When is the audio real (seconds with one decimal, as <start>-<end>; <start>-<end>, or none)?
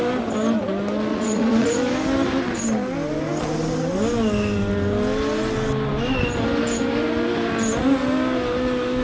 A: 0.0-1.1; 1.8-9.0